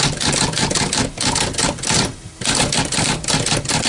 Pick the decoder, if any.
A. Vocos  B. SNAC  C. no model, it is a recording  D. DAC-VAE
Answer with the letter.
C